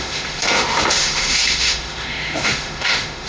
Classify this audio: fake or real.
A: fake